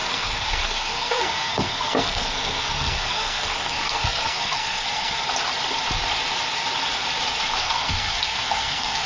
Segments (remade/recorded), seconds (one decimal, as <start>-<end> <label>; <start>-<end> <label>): 0.0-5.2 remade; 5.2-7.6 recorded; 7.6-9.1 remade